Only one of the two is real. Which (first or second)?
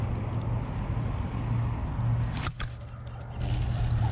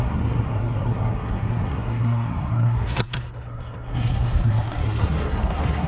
first